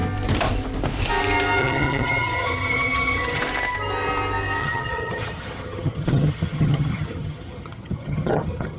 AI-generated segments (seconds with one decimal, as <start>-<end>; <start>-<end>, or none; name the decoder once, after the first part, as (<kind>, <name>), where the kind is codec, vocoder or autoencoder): 1.6-3.4 (vocoder, HiFi-GAN); 4.6-8.8